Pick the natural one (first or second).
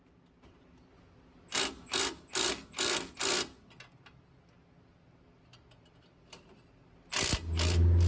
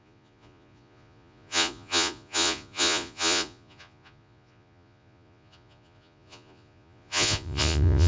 first